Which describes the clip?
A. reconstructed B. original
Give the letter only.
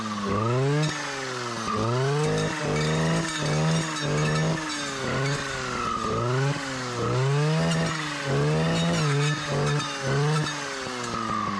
B